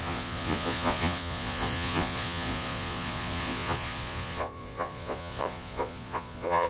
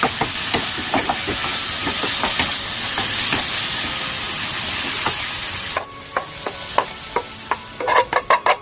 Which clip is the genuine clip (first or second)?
second